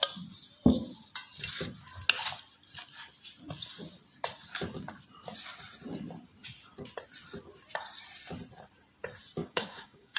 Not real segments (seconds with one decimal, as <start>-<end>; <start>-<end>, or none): 9.4-10.2